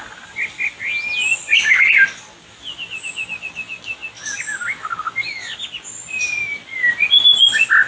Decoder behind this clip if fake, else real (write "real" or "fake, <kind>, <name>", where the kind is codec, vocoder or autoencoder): real